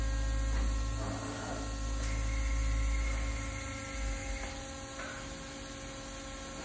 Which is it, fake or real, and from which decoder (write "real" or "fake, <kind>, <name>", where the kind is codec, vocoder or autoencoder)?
real